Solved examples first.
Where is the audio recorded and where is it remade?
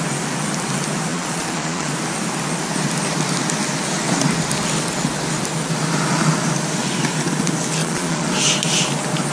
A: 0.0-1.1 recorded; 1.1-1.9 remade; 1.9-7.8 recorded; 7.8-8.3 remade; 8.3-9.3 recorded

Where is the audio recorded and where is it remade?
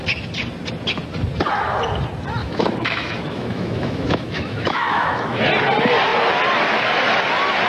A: 0.0-2.4 recorded; 2.4-5.4 remade; 5.4-7.7 recorded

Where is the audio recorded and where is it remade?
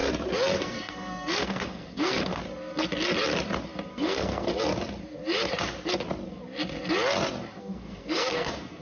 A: 0.0-0.6 recorded; 0.6-2.4 remade; 2.4-3.9 recorded; 3.9-4.5 remade; 4.5-7.6 recorded; 7.6-8.8 remade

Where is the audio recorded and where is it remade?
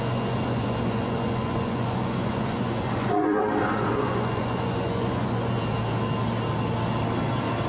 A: 0.0-5.6 remade; 5.6-7.7 recorded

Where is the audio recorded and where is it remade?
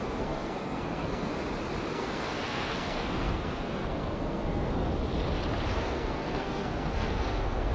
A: 0.0-1.3 remade; 1.3-1.9 recorded; 1.9-4.9 remade; 4.9-5.7 recorded; 5.7-7.7 remade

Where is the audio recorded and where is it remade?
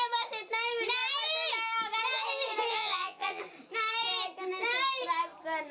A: 0.0-2.7 recorded; 2.7-3.4 remade; 3.4-5.7 recorded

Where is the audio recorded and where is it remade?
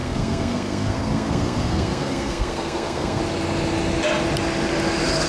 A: 0.0-3.2 remade; 3.2-5.3 recorded